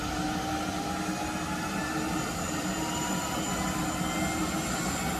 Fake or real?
real